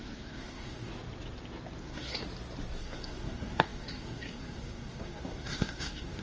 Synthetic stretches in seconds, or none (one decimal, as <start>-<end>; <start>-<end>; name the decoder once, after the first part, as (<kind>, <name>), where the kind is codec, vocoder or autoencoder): 0.0-0.9 (codec, SNAC); 1.8-2.2; 2.8-6.2